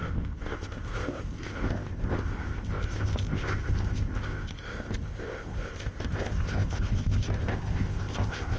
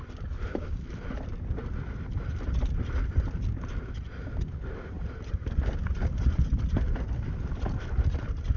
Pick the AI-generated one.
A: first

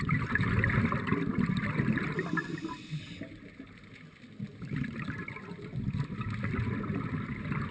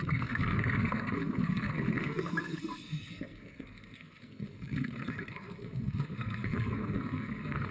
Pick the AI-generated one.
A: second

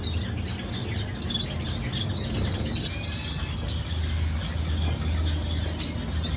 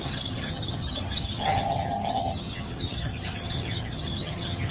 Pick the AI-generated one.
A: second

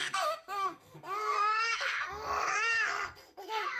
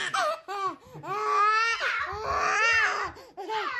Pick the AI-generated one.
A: first